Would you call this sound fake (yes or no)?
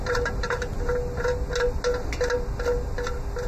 no